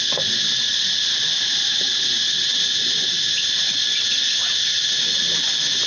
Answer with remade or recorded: recorded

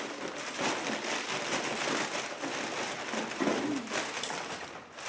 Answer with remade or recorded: recorded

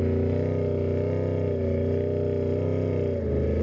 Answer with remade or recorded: recorded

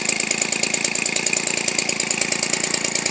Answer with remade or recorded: recorded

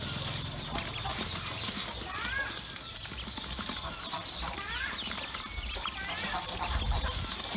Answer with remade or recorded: recorded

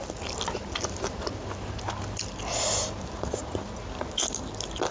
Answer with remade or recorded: recorded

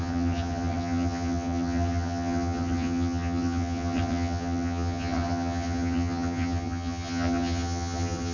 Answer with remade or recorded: remade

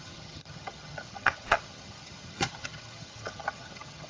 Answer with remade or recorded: remade